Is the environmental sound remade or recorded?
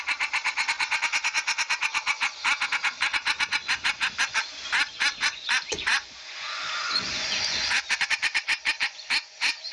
remade